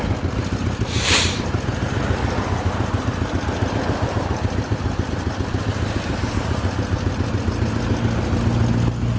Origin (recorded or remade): recorded